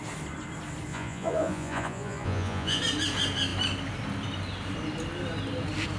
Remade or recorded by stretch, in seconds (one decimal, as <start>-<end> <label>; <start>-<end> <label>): 0.0-0.9 recorded; 0.9-2.8 remade; 2.8-6.0 recorded